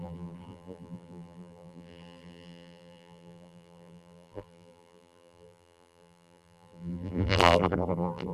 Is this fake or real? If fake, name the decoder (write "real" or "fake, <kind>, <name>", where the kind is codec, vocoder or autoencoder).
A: fake, vocoder, BigVGAN v2